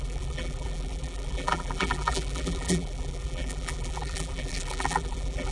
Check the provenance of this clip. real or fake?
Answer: fake